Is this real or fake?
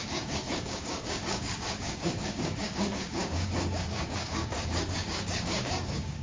fake